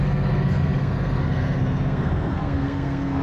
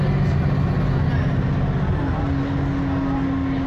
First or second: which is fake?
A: first